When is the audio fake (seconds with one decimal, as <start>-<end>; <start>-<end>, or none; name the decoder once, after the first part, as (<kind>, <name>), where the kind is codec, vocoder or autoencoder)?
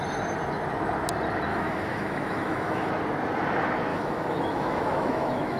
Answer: 1.5-2.9 (autoencoder, DAC-VAE); 3.9-5.6